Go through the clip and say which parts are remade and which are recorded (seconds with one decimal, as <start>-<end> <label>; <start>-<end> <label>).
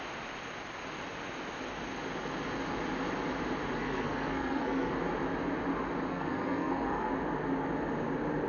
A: 0.0-3.8 recorded; 3.8-4.9 remade; 4.9-6.1 recorded; 6.1-7.1 remade; 7.1-8.5 recorded